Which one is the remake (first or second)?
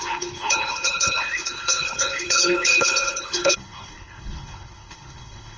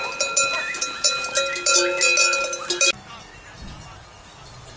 first